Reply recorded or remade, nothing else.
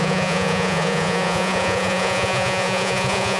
remade